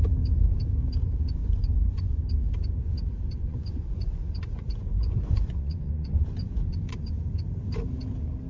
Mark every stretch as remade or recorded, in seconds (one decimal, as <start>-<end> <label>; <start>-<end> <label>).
0.0-1.4 recorded; 1.4-2.2 remade; 2.2-3.4 recorded; 3.4-7.2 remade; 7.2-8.5 recorded